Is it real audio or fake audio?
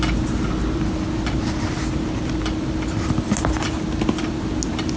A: real